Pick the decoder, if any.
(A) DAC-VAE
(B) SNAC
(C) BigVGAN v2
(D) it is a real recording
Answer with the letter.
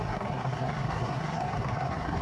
B